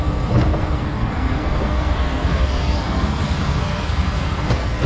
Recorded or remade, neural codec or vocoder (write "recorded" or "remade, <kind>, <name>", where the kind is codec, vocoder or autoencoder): remade, codec, SNAC